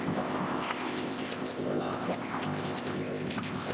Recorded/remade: remade